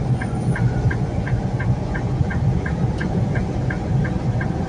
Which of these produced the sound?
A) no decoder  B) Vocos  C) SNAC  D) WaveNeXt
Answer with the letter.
B